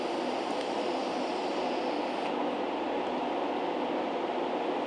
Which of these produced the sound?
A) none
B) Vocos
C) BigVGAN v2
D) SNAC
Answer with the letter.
A